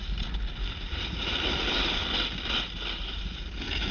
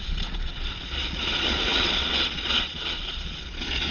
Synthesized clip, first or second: second